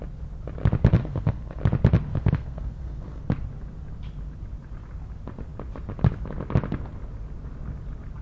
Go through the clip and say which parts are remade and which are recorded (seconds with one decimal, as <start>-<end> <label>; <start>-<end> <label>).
0.0-1.0 recorded; 1.0-1.6 remade; 1.6-2.1 recorded; 2.1-3.2 remade; 3.2-8.2 recorded